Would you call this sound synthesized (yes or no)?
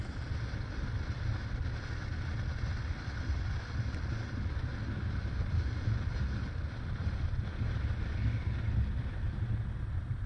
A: no